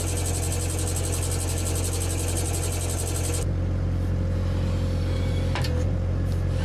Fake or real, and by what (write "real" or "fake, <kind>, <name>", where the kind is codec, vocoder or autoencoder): real